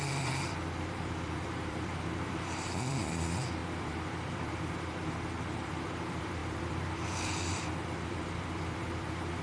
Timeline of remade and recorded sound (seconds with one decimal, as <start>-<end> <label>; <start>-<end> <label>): 0.0-9.4 remade